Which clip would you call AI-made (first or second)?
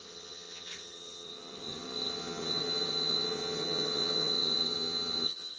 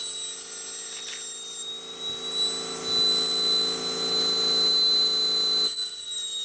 first